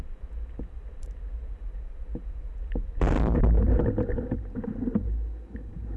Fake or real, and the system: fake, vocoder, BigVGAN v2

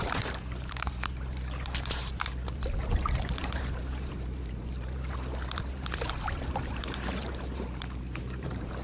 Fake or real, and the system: fake, vocoder, BigVGAN v2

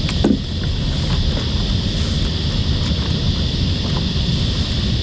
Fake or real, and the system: real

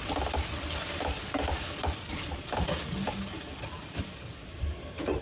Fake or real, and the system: fake, vocoder, BigVGAN v2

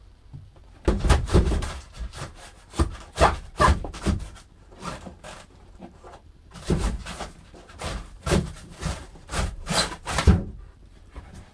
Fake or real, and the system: fake, vocoder, BigVGAN v2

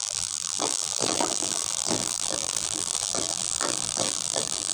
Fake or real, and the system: fake, vocoder, BigVGAN v2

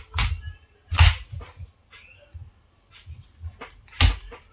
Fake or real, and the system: real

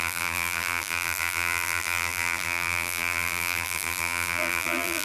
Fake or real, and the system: fake, vocoder, BigVGAN v2